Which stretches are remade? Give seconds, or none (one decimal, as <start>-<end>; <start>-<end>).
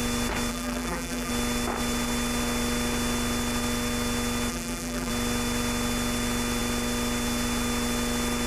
0.5-1.3; 4.5-5.1